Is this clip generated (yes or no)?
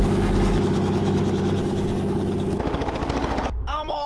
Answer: yes